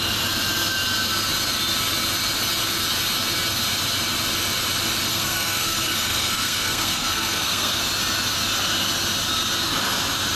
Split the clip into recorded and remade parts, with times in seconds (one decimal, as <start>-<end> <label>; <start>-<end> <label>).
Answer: 0.0-5.1 recorded; 5.1-7.8 remade; 7.8-10.4 recorded